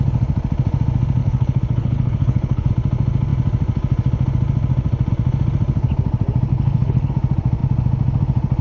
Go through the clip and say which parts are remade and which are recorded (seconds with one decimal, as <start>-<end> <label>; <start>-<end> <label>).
0.0-1.2 recorded; 1.2-2.7 remade; 2.7-6.5 recorded; 6.5-7.1 remade; 7.1-8.6 recorded